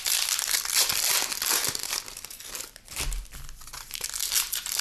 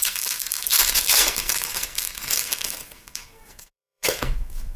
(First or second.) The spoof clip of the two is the second